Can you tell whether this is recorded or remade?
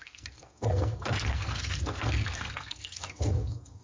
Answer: remade